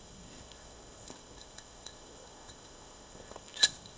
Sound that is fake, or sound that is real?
fake